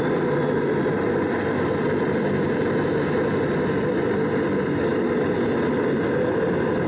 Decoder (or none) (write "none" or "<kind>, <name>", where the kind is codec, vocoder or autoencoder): none